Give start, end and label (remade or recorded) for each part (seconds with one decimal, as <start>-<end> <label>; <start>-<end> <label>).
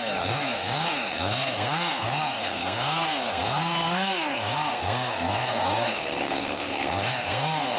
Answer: 0.0-7.8 remade